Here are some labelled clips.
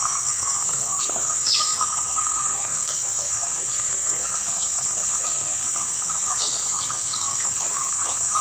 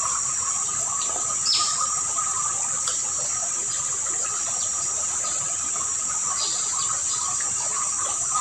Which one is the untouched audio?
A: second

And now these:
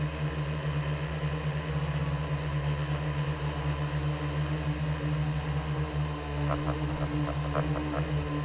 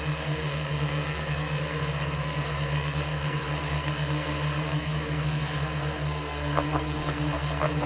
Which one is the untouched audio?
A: first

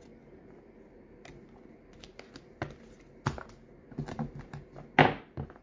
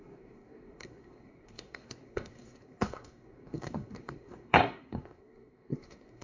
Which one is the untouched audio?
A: first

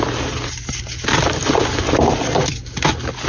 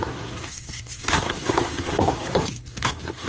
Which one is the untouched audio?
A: first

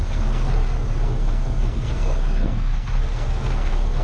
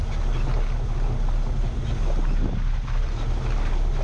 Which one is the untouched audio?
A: second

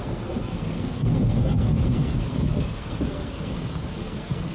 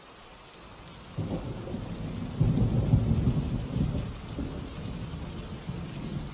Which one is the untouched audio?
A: second